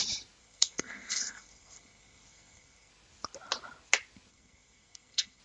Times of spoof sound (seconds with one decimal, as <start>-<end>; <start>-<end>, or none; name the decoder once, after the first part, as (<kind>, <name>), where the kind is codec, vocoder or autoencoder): 0.4-2.9 (codec, SNAC); 4.3-5.4